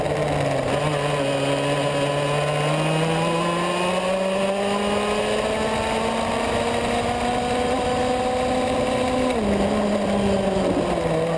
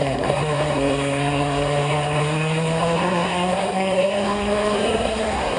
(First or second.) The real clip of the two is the first